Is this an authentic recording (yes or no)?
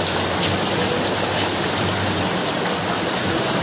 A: yes